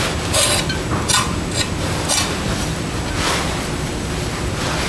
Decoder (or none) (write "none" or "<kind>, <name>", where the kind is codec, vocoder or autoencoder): none